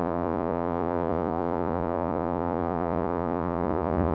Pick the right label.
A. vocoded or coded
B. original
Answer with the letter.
A